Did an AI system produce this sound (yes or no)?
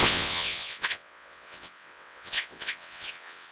yes